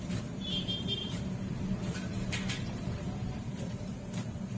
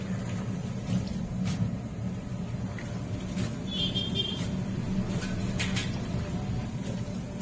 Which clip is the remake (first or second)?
first